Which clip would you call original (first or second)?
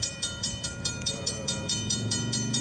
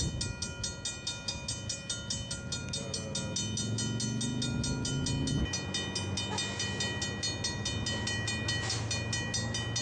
second